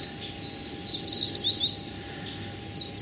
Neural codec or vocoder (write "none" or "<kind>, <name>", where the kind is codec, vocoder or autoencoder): none